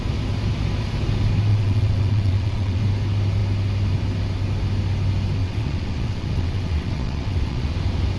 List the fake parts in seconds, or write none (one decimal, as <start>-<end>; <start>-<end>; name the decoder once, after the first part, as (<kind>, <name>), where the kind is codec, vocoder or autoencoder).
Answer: 1.5-2.8 (vocoder, WaveNeXt); 5.4-7.7